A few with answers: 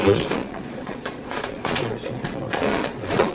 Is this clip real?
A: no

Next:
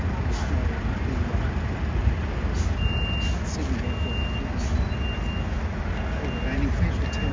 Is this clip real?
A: yes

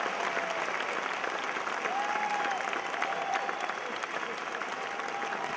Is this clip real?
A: yes